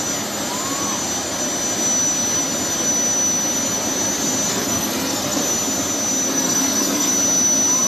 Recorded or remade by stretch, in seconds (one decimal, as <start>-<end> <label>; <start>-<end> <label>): 0.0-4.5 recorded; 4.5-5.4 remade; 5.4-6.3 recorded; 6.3-7.1 remade; 7.1-7.9 recorded